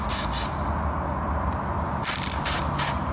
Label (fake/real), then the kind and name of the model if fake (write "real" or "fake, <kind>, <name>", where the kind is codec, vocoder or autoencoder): real